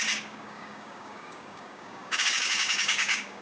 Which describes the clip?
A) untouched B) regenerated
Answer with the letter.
B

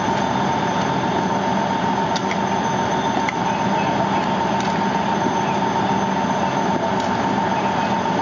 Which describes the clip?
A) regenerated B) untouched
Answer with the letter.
B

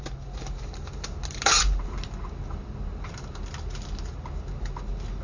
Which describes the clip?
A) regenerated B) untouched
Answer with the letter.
B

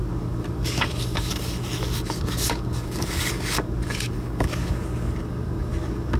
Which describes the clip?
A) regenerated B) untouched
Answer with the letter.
A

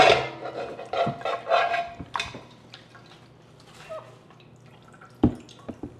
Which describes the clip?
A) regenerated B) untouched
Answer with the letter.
B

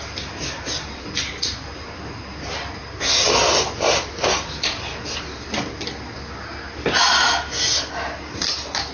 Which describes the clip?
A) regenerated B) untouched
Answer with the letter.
B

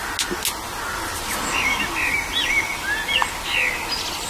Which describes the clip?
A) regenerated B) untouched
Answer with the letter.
B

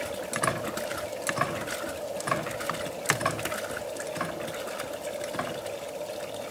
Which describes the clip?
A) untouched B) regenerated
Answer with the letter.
A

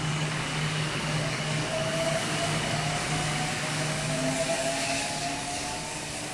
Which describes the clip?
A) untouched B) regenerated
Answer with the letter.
B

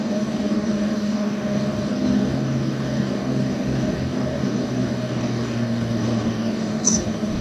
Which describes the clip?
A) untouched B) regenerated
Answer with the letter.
B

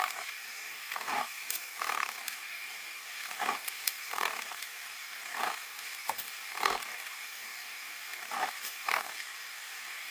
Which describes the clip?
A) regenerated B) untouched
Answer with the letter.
A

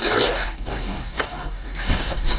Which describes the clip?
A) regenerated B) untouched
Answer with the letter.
A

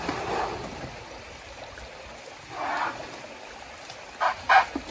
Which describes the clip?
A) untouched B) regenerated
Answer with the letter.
A